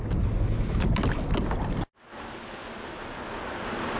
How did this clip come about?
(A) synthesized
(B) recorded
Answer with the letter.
B